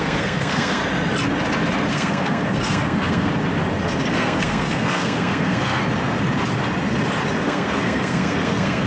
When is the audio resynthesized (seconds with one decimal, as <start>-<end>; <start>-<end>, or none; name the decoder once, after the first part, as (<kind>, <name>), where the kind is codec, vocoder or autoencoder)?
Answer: 0.0-0.8 (codec, SNAC); 1.9-3.3; 4.1-5.8; 7.4-8.9